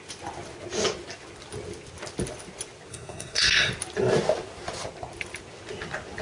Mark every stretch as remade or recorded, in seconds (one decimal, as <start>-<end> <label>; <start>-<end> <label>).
0.0-2.9 recorded; 2.9-3.7 remade; 3.7-6.2 recorded